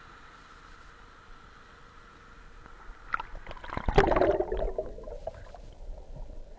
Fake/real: real